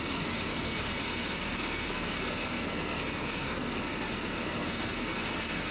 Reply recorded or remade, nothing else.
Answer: remade